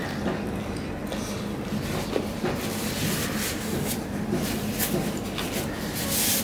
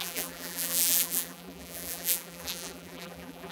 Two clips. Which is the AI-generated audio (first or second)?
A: second